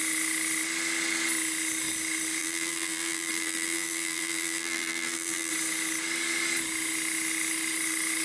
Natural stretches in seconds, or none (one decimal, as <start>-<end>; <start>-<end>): 0.0-2.4; 5.5-8.2